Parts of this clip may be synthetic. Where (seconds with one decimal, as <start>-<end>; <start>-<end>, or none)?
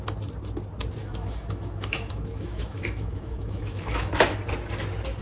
1.0-4.1